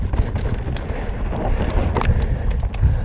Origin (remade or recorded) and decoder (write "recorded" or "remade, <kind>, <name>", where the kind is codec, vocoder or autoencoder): recorded